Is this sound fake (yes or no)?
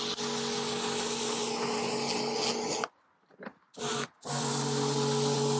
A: no